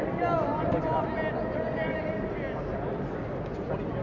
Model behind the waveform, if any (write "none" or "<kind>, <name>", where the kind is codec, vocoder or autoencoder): none